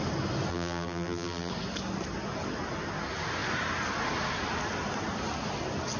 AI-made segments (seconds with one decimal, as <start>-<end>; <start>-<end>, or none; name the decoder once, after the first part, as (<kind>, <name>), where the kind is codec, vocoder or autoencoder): 0.5-1.5 (vocoder, BigVGAN v2)